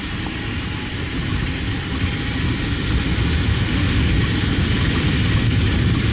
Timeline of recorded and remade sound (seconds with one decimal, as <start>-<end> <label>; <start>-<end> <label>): 0.0-3.5 recorded; 3.5-4.1 remade; 4.1-6.1 recorded